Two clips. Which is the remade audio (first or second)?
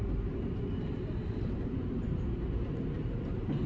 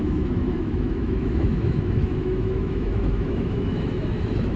second